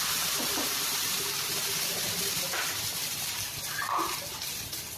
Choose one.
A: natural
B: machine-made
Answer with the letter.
B